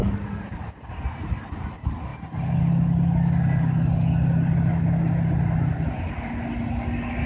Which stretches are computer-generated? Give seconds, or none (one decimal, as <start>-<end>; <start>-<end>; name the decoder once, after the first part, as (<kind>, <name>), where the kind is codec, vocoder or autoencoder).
none